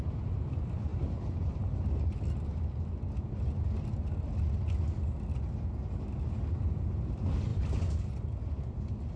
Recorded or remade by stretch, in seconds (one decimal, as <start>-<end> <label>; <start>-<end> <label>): 0.0-9.2 recorded